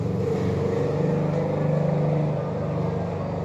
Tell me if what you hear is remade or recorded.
recorded